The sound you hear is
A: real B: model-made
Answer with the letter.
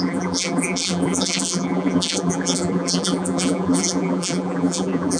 B